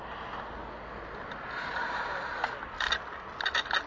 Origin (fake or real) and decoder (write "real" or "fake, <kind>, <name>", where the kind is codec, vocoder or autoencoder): real